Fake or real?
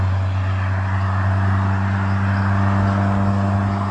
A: real